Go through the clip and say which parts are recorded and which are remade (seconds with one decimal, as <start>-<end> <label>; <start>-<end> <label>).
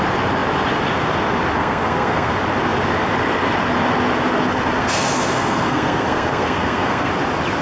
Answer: 0.0-1.6 recorded; 1.6-2.3 remade; 2.3-4.8 recorded; 4.8-7.1 remade; 7.1-7.6 recorded